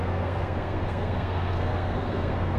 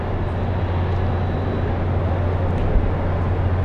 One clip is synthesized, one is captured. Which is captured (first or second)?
second